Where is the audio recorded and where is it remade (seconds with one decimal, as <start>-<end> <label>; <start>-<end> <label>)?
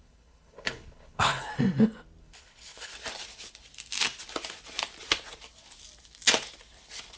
0.0-1.5 remade; 1.5-2.2 recorded; 2.2-2.9 remade; 2.9-7.2 recorded